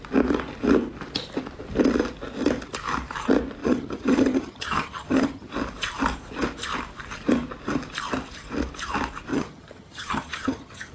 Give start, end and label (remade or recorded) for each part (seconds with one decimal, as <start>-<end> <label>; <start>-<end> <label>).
0.0-3.6 recorded; 3.6-5.5 remade; 5.5-9.3 recorded; 9.3-10.9 remade